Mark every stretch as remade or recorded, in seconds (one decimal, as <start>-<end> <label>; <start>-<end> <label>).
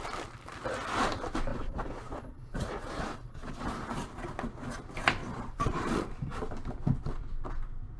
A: 0.0-1.5 recorded; 1.5-3.7 remade; 3.7-5.2 recorded; 5.2-6.1 remade; 6.1-8.0 recorded